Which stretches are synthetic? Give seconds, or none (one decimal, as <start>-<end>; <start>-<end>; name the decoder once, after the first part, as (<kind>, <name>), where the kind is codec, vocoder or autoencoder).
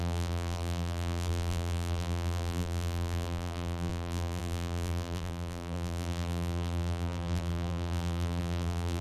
0.0-9.0 (vocoder, BigVGAN v2)